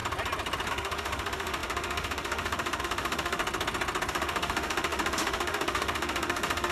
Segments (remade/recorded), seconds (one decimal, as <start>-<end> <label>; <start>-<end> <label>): 0.0-0.7 recorded; 0.7-3.4 remade; 3.4-4.1 recorded; 4.1-6.7 remade